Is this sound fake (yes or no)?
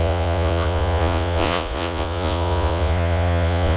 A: yes